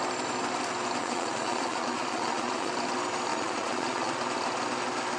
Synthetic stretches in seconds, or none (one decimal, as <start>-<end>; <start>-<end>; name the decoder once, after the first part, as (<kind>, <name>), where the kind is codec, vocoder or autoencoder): 1.0-2.7 (vocoder, Vocos); 3.3-4.2